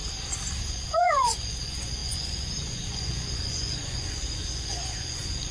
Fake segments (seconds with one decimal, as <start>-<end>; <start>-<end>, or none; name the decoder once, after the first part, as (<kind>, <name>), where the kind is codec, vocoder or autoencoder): 0.7-5.5 (vocoder, Vocos)